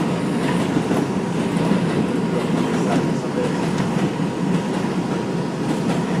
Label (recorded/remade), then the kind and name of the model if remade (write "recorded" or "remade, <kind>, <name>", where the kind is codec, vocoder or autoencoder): recorded